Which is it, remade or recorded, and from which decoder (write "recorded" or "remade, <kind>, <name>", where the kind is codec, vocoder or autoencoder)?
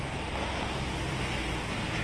recorded